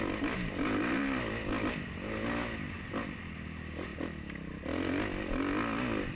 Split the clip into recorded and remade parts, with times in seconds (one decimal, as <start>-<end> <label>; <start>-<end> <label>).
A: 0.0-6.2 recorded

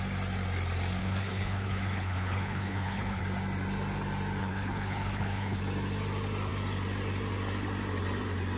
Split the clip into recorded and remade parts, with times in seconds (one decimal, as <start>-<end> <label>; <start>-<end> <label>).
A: 0.0-1.0 recorded; 1.0-3.2 remade; 3.2-4.4 recorded; 4.4-5.6 remade; 5.6-8.6 recorded

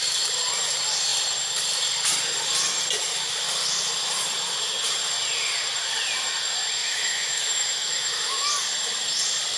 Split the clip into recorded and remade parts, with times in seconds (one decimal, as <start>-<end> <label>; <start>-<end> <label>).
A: 0.0-6.8 recorded; 6.8-8.5 remade; 8.5-9.6 recorded

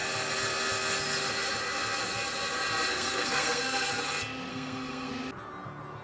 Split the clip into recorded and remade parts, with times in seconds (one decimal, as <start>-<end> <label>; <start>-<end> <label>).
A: 0.0-2.9 recorded; 2.9-3.9 remade; 3.9-4.5 recorded; 4.5-5.1 remade; 5.1-6.0 recorded

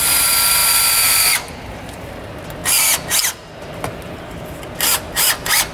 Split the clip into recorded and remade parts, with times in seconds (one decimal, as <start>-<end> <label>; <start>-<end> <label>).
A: 0.0-0.6 recorded; 0.6-1.8 remade; 1.8-5.7 recorded

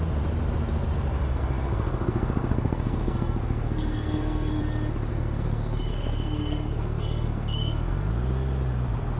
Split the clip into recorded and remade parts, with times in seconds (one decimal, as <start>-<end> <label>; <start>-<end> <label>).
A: 0.0-1.3 recorded; 1.3-4.6 remade; 4.6-5.1 recorded; 5.1-8.1 remade; 8.1-9.2 recorded

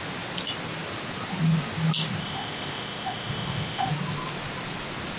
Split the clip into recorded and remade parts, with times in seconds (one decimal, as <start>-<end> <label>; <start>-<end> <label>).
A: 0.0-2.2 recorded; 2.2-3.9 remade; 3.9-5.2 recorded